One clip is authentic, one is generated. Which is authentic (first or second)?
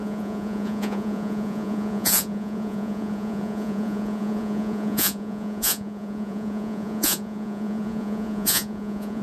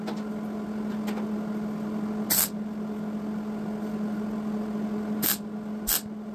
second